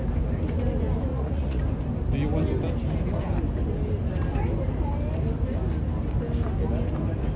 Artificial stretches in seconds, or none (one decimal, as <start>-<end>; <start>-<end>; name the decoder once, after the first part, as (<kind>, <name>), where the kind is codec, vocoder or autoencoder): 1.1-1.6 (vocoder, Vocos)